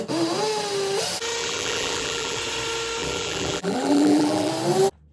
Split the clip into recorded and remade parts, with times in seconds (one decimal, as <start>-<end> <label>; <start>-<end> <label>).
0.0-1.4 recorded; 1.4-2.4 remade; 2.4-3.0 recorded; 3.0-4.5 remade; 4.5-5.1 recorded